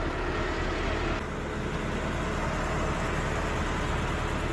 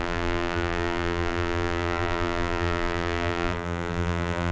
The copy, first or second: second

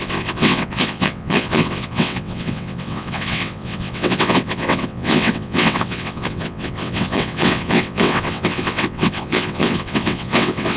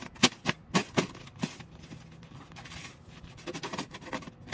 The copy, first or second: first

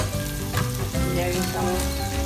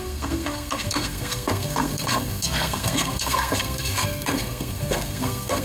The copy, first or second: second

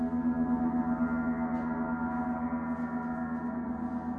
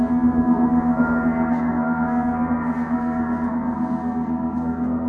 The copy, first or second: second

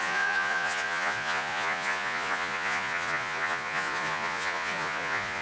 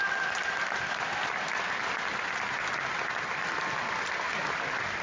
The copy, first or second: first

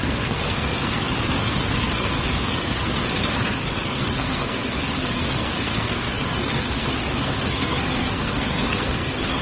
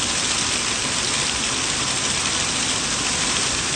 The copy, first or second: first